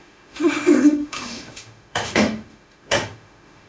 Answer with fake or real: fake